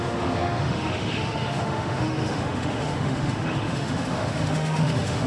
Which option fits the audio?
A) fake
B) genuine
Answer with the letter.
A